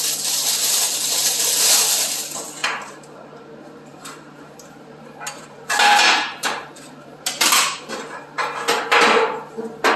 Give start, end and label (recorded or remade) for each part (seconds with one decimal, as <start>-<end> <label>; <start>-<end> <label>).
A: 0.0-2.6 recorded; 2.6-3.5 remade; 3.5-3.9 recorded; 3.9-8.8 remade; 8.8-10.0 recorded